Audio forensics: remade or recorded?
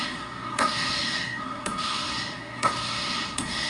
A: remade